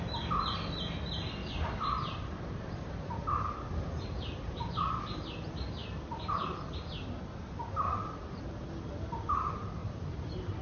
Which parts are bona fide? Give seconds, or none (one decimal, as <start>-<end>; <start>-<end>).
0.0-1.4; 4.6-5.8; 6.6-9.8